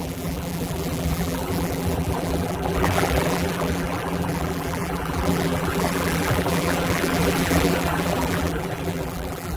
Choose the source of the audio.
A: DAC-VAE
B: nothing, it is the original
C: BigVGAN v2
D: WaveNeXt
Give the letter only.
C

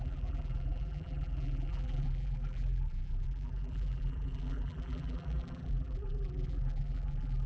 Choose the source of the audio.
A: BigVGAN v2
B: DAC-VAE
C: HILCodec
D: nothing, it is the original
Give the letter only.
A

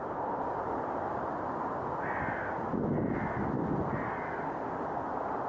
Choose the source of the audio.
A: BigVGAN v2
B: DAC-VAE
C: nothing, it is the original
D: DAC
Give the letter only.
C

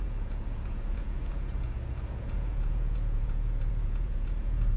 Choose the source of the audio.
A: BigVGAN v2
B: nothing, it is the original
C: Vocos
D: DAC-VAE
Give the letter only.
C